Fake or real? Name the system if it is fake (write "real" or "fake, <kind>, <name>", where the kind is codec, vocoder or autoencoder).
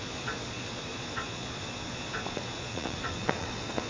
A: fake, vocoder, Vocos